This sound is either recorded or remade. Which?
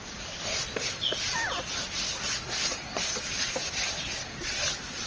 recorded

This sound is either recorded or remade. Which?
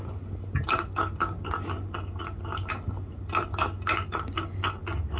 recorded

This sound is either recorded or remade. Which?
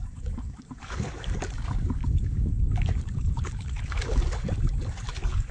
remade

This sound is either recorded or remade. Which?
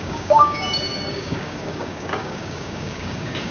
remade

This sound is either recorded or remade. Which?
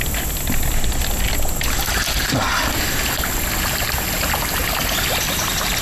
recorded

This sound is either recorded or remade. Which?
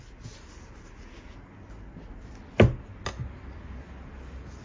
recorded